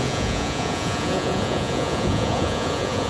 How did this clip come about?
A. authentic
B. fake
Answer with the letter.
B